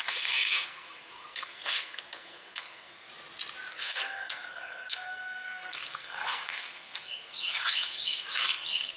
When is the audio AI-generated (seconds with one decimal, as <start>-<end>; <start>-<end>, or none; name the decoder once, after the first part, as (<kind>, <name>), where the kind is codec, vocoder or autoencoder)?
0.0-3.1 (codec, SNAC); 3.7-9.0